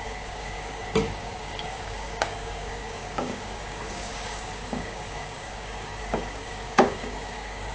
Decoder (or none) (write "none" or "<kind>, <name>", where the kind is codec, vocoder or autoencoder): codec, DAC